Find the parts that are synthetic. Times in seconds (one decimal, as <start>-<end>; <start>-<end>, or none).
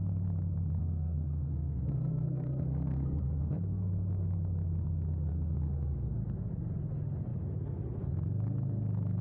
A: 0.8-3.9; 5.3-6.1